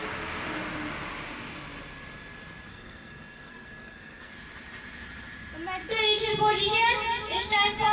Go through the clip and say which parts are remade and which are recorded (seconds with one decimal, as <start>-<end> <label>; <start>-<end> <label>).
0.0-2.7 recorded; 2.7-4.3 remade; 4.3-7.9 recorded

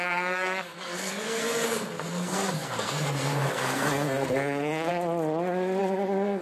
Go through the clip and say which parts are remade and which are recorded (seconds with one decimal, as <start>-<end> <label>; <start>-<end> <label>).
0.0-4.9 remade; 4.9-5.8 recorded; 5.8-6.4 remade